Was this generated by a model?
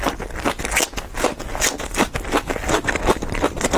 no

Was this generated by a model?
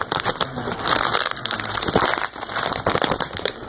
yes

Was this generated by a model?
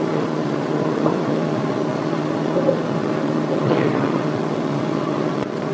yes